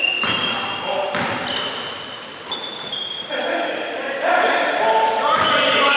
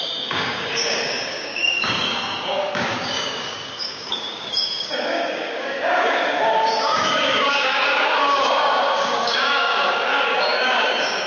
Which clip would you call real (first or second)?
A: first